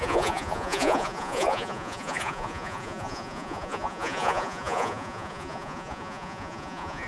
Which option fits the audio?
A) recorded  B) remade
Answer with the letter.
B